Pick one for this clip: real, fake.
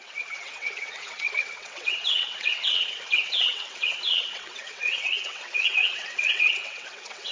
fake